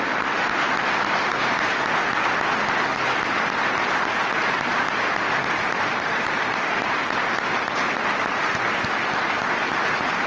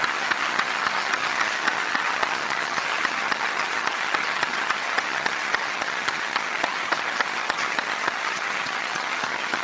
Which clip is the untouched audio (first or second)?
first